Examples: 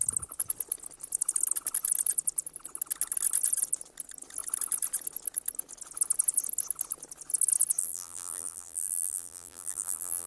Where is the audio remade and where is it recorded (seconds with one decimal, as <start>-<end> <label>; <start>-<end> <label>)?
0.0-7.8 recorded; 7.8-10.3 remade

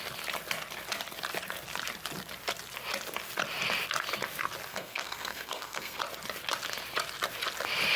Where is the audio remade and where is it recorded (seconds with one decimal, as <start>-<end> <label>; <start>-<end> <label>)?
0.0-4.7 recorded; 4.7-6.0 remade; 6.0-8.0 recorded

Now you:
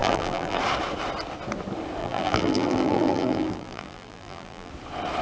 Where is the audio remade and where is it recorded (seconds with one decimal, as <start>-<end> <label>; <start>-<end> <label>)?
0.0-0.6 remade; 0.6-2.0 recorded; 2.0-4.7 remade; 4.7-5.2 recorded